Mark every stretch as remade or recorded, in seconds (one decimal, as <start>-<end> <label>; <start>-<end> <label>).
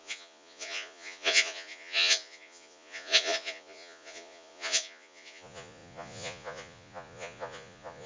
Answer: 0.0-8.1 remade